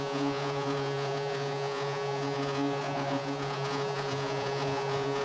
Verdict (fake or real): fake